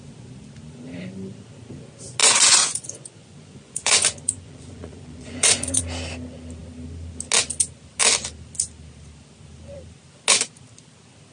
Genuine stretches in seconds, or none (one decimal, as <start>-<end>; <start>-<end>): 0.0-2.2; 5.8-11.3